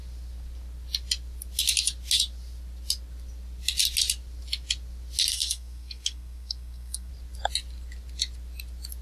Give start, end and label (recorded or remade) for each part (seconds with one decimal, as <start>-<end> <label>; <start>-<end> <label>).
0.0-5.3 recorded; 5.3-7.1 remade; 7.1-9.0 recorded